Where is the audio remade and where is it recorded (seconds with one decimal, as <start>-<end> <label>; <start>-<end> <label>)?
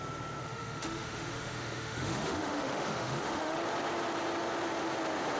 0.0-0.4 recorded; 0.4-3.6 remade; 3.6-5.4 recorded